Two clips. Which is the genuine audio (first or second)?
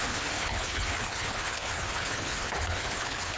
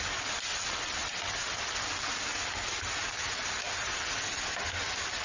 second